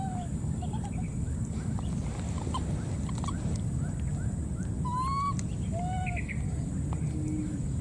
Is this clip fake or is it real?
real